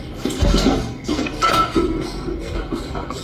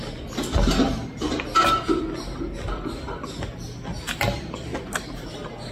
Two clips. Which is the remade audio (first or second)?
first